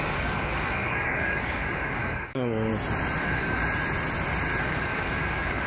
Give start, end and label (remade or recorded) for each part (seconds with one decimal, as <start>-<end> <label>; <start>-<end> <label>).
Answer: 0.0-2.7 remade; 2.7-3.2 recorded; 3.2-3.6 remade; 3.6-4.6 recorded; 4.6-5.7 remade